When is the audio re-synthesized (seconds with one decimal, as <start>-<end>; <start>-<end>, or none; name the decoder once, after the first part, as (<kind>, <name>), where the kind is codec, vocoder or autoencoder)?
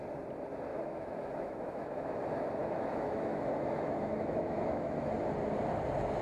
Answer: 0.7-2.2 (autoencoder, DAC-VAE); 2.6-5.1